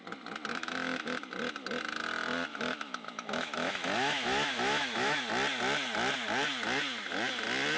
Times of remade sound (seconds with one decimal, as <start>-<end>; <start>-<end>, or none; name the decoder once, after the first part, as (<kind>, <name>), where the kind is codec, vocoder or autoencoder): 0.5-1.2 (autoencoder, DAC-VAE); 2.5-5.2